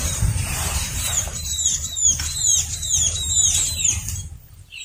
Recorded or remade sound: remade